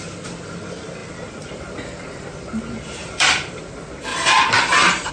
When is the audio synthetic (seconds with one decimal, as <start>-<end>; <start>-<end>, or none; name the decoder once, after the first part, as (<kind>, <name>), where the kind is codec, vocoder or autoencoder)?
3.0-3.6 (vocoder, BigVGAN v2); 4.1-5.1